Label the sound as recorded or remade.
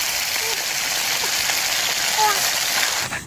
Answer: recorded